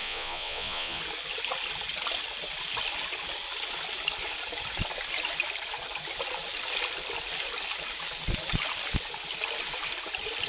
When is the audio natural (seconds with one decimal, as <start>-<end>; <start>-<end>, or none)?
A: 1.0-10.5